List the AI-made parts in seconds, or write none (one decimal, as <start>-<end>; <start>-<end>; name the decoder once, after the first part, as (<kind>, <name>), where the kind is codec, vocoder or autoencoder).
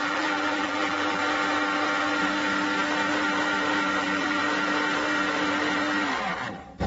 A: 0.0-1.2 (vocoder, BigVGAN v2); 4.0-4.4